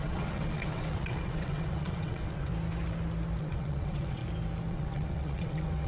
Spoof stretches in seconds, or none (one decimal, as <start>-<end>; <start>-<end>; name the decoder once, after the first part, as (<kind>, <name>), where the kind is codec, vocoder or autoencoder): 0.0-2.5 (vocoder, WaveNeXt); 3.4-4.2; 4.7-5.9